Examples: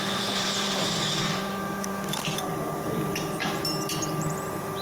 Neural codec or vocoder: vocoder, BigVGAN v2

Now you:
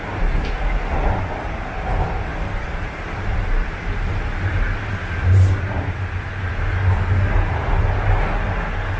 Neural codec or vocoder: none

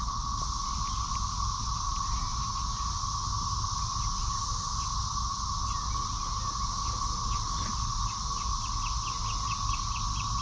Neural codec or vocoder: none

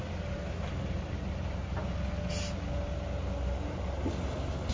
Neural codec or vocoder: none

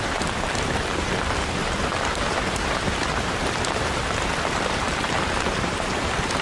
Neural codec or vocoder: vocoder, BigVGAN v2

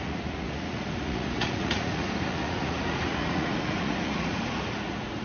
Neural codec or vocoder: vocoder, Vocos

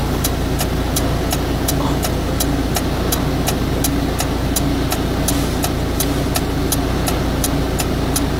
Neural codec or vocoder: none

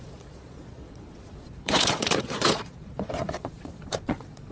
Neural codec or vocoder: vocoder, Vocos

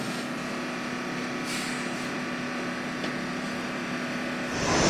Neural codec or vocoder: none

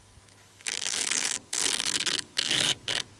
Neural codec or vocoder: codec, DAC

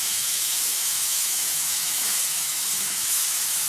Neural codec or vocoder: autoencoder, DAC-VAE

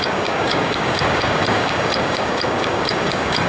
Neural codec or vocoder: codec, DAC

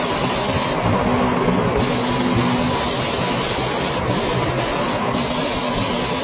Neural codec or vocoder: none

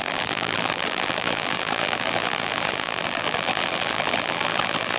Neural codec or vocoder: vocoder, BigVGAN v2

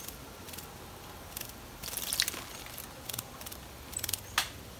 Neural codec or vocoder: none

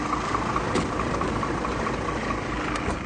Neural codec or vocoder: none